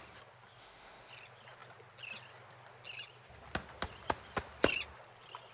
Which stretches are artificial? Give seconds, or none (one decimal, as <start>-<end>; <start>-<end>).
0.6-1.1